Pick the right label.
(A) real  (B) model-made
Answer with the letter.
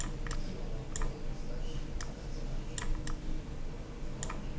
A